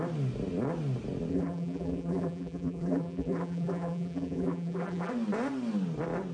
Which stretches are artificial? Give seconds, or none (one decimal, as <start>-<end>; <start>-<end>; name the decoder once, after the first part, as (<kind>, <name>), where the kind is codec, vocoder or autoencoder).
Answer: 1.3-5.1 (vocoder, BigVGAN v2)